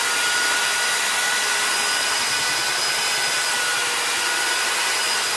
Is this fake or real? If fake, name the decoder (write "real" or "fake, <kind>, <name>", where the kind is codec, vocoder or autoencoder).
real